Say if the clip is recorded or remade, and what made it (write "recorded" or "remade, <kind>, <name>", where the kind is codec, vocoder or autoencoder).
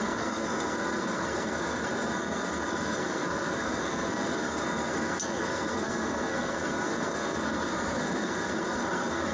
remade, codec, SNAC